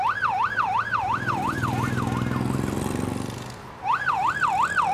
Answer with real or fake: real